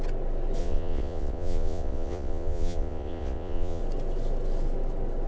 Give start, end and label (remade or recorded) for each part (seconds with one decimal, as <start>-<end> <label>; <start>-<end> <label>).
0.0-0.6 recorded; 0.6-3.8 remade; 3.8-5.3 recorded